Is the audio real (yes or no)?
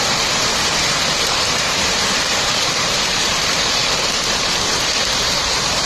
no